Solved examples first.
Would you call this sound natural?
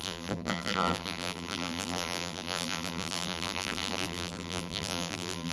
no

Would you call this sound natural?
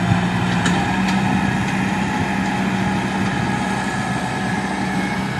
yes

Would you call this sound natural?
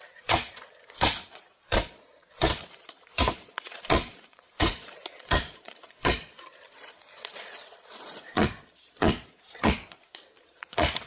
no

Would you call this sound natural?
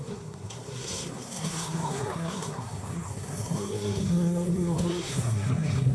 no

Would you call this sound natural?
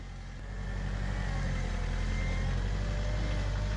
yes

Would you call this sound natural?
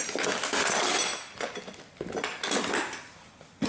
yes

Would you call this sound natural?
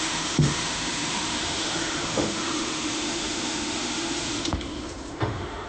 no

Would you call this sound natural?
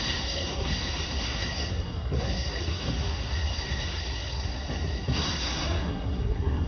no